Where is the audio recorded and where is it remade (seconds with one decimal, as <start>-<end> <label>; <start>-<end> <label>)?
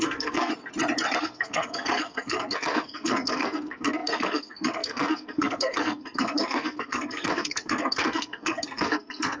0.0-0.5 remade; 0.5-1.2 recorded; 1.2-9.4 remade